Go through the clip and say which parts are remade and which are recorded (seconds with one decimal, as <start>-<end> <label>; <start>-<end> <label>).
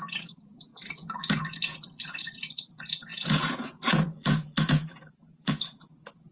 0.0-6.3 remade